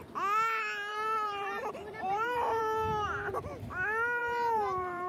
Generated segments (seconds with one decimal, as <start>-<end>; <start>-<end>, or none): 0.9-2.6; 4.2-5.1